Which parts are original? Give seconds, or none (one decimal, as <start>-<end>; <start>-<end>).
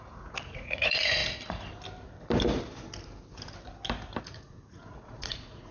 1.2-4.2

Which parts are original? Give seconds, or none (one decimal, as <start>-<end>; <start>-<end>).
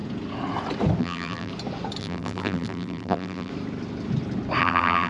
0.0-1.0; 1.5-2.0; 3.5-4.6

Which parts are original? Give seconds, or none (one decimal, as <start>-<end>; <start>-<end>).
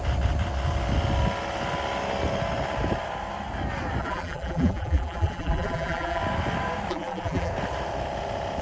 0.0-4.0; 6.2-6.9; 7.5-8.6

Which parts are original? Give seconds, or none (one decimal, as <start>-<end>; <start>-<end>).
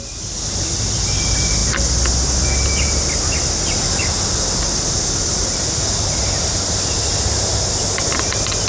0.0-6.5; 7.7-8.7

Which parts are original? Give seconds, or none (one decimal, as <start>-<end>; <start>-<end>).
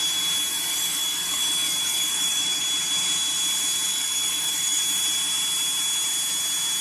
0.0-0.5; 2.6-3.9; 4.8-6.8